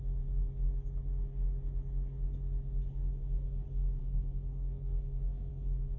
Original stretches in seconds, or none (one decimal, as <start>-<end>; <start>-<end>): 0.0-4.0; 5.5-6.0

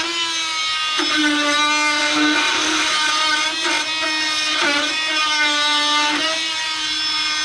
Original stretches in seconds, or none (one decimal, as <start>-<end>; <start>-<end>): 1.2-2.0; 3.6-4.5

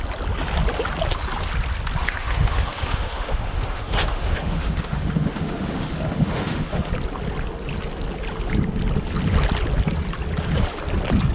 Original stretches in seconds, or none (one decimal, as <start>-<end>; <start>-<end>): 0.0-2.0; 6.9-11.3

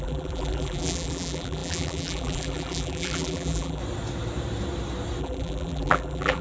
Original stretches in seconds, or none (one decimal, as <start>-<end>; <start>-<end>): 3.8-5.2

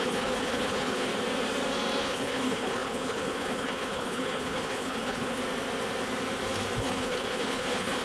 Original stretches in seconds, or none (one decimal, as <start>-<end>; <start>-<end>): 1.1-2.0; 5.4-6.8